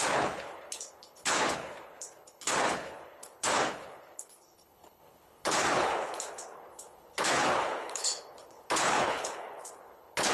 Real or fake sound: fake